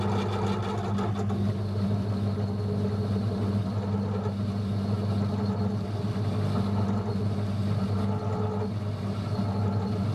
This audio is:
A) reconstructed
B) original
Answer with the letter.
B